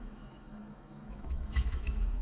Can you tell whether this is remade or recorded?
remade